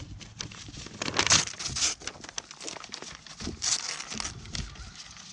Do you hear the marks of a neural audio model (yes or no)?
no